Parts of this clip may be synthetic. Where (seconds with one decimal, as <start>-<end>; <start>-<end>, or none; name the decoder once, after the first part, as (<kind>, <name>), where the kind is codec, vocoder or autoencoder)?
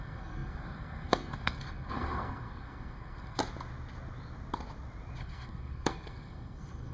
0.0-3.4 (codec, SNAC); 5.2-6.9